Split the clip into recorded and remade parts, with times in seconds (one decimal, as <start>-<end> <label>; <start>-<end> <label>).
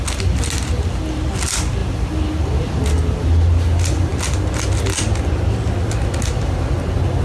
0.0-7.2 recorded